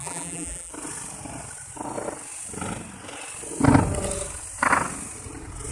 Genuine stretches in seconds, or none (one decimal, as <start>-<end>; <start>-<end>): 0.7-5.7